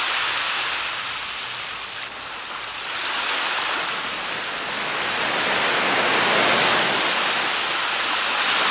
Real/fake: real